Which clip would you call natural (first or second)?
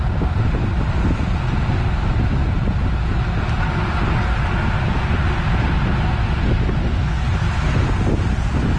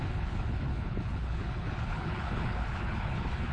first